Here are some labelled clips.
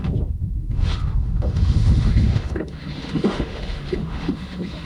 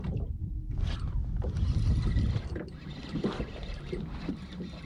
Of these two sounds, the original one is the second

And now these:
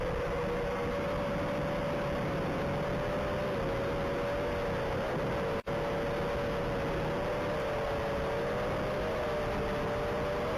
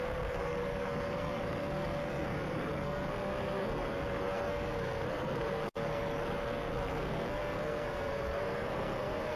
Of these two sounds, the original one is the first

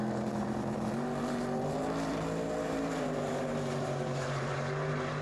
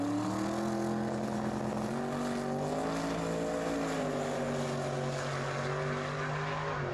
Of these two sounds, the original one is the second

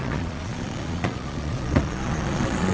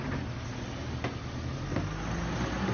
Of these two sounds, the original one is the second